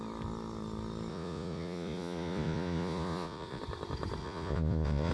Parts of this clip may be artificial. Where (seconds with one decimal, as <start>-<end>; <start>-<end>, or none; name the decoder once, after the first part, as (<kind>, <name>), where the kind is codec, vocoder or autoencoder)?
1.1-3.6 (vocoder, Vocos); 4.2-5.1